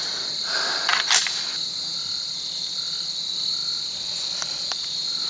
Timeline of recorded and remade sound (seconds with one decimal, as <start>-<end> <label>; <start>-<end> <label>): 0.0-5.3 recorded